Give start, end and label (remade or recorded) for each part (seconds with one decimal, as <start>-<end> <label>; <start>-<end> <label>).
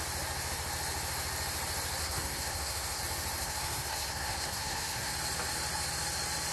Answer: 0.0-2.0 recorded; 2.0-3.0 remade; 3.0-3.4 recorded; 3.4-5.1 remade; 5.1-6.5 recorded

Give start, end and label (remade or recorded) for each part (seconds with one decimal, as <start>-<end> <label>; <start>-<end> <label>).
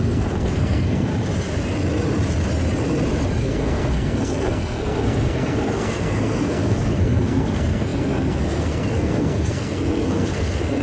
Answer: 0.0-1.1 remade; 1.1-3.4 recorded; 3.4-10.8 remade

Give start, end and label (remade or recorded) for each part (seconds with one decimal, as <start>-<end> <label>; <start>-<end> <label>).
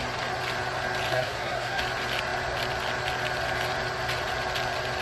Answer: 0.0-1.1 recorded; 1.1-1.8 remade; 1.8-5.0 recorded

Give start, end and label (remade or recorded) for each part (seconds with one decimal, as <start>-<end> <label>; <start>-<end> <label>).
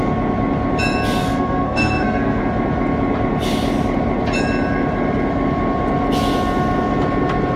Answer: 0.0-1.2 recorded; 1.2-2.4 remade; 2.4-7.6 recorded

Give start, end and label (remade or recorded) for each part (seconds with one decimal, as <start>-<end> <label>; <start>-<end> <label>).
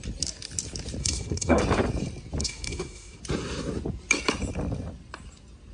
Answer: 0.0-1.0 recorded; 1.0-1.6 remade; 1.6-2.4 recorded; 2.4-3.2 remade; 3.2-5.7 recorded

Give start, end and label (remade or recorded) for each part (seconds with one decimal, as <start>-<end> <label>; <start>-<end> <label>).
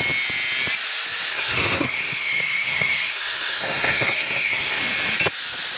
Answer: 0.0-1.3 recorded; 1.3-4.8 remade; 4.8-5.8 recorded